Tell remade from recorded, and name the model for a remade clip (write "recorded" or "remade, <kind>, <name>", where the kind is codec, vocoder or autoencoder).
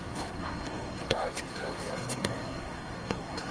remade, codec, SNAC